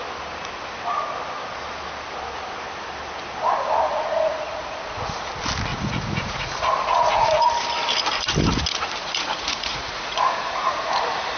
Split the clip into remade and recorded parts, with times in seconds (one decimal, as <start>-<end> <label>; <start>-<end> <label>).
0.0-3.9 recorded; 3.9-5.3 remade; 5.3-5.7 recorded; 5.7-7.5 remade; 7.5-9.0 recorded; 9.0-11.4 remade